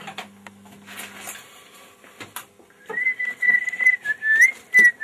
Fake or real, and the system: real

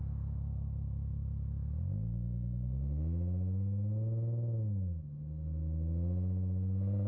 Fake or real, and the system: real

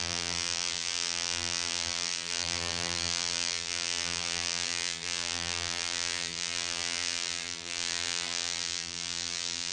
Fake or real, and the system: fake, vocoder, BigVGAN v2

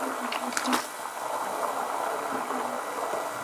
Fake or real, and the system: real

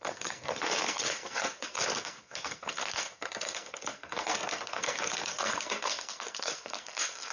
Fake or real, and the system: fake, codec, SNAC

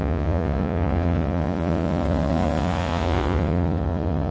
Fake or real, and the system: fake, vocoder, Vocos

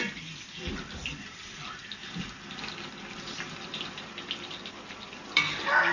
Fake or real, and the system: real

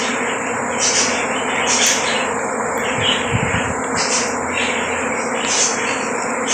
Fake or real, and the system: real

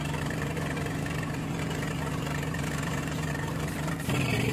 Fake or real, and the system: fake, vocoder, BigVGAN v2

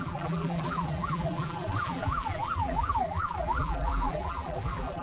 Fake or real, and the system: fake, vocoder, BigVGAN v2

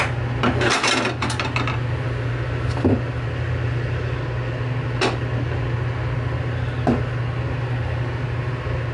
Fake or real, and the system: real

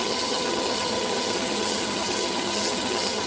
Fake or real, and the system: fake, vocoder, HiFi-GAN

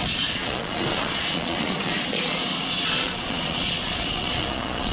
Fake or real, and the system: fake, vocoder, Vocos